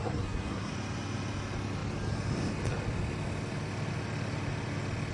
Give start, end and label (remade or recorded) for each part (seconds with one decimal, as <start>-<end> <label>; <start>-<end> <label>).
0.0-0.7 remade; 0.7-5.1 recorded